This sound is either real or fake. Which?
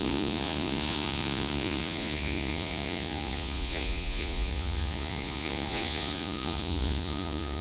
fake